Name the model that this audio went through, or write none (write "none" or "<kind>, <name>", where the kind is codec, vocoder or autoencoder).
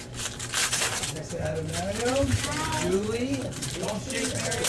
vocoder, BigVGAN v2